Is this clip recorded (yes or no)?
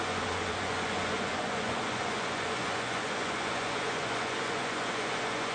no